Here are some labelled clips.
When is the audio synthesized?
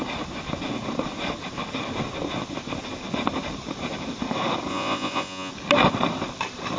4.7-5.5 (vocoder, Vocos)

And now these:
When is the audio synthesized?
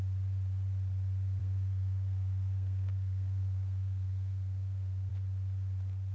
1.4-5.1 (codec, SNAC)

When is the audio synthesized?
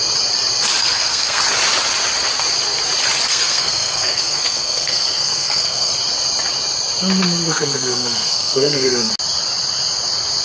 0.8-1.4 (codec, SNAC); 3.3-5.9; 7.5-9.1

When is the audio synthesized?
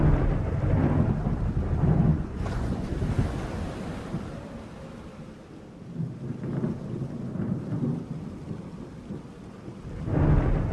2.1-2.9 (vocoder, Vocos)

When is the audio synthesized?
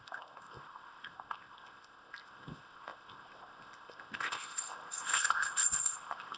0.0-6.4 (codec, ZipCodec)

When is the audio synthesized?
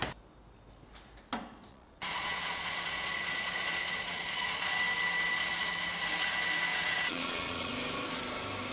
1.7-4.7 (vocoder, Vocos); 6.7-7.7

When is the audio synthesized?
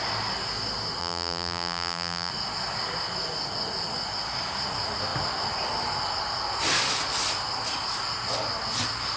1.0-2.3 (vocoder, BigVGAN v2)